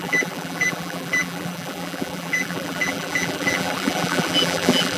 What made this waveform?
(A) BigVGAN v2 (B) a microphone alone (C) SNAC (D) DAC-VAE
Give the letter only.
A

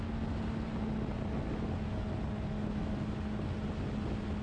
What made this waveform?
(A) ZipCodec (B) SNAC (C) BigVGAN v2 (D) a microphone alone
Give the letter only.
D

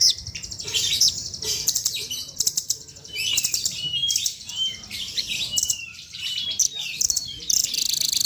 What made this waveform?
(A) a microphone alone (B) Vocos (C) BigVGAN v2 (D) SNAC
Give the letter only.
C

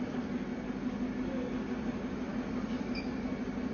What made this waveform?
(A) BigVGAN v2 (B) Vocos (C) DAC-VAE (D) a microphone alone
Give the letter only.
D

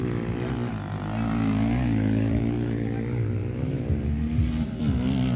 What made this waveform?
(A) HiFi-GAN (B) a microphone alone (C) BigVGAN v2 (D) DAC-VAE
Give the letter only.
B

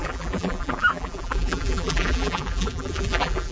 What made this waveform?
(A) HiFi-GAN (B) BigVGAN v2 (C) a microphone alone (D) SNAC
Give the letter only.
B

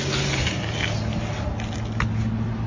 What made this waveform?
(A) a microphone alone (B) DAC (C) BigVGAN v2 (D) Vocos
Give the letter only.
A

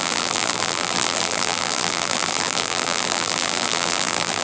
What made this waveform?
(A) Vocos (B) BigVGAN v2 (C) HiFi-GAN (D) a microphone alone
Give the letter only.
B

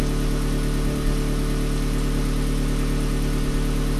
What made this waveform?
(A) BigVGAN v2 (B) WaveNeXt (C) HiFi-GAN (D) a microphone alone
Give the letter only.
D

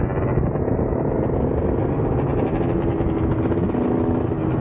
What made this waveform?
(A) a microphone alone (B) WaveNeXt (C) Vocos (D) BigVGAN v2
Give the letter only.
A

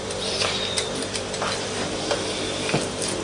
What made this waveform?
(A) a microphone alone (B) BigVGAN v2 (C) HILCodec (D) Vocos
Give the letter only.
B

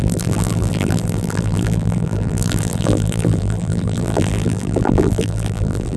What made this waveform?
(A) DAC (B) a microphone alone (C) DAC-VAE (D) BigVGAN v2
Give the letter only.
D